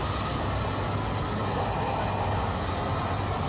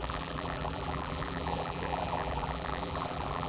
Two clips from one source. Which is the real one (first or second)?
first